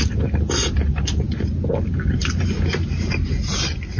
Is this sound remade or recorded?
recorded